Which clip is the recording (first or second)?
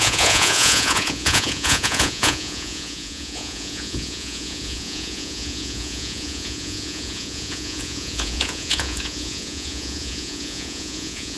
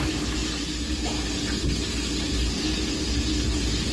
second